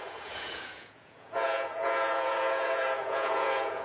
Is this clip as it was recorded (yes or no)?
no